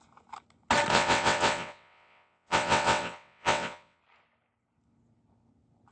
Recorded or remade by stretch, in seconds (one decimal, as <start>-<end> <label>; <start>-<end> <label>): 0.0-0.9 recorded; 0.9-4.0 remade; 4.0-5.9 recorded